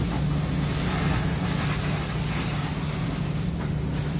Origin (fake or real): real